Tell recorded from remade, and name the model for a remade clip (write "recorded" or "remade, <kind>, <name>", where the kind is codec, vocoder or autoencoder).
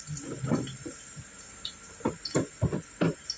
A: remade, vocoder, BigVGAN v2